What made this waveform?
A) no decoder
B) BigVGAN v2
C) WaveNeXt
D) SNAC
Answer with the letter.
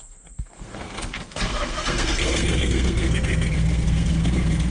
D